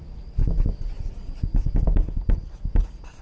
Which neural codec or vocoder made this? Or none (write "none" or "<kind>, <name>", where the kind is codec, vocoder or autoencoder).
none